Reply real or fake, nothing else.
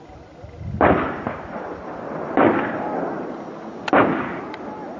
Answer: real